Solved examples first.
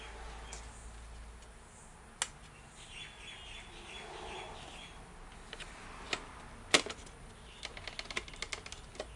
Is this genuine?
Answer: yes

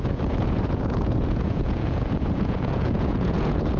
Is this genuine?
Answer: no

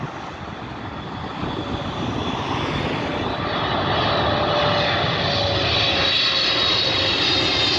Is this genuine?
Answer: yes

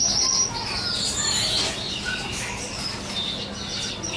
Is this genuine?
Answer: yes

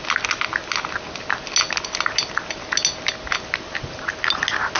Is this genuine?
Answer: yes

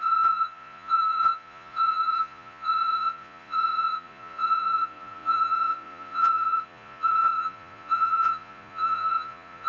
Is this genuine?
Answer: no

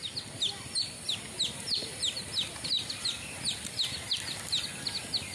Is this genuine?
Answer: yes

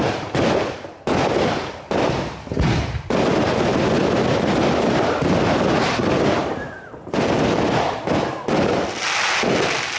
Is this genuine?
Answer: yes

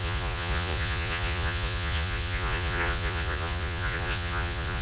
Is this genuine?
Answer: no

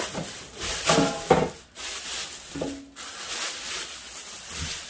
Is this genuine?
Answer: yes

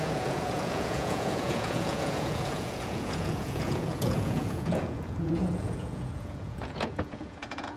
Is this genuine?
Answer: no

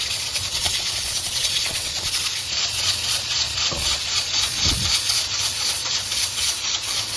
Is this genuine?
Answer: no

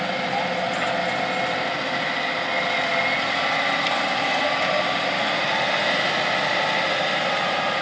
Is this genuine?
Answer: yes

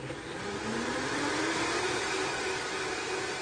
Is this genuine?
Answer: yes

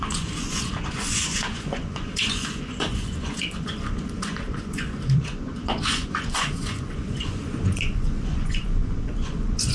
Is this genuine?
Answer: no